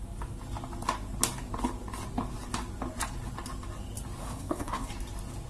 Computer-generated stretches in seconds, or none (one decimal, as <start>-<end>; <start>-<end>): 4.2-4.9

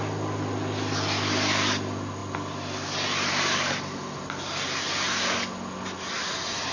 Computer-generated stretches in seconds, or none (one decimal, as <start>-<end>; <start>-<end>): none

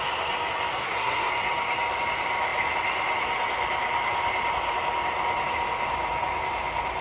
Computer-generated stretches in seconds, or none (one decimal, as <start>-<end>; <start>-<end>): 0.7-1.3

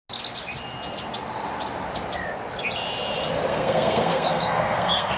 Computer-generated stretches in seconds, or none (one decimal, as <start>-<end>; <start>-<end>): 3.5-5.2